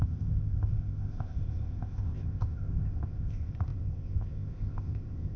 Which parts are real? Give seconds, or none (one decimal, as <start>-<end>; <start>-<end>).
none